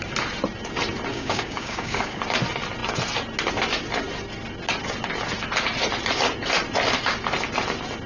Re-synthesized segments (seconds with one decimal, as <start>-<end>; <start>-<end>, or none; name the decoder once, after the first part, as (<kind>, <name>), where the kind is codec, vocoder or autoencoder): 1.1-2.2 (codec, DAC)